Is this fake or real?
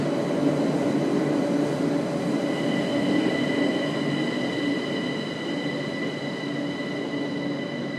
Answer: real